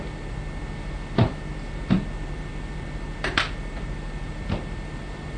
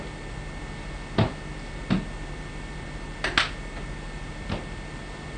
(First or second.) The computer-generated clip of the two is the first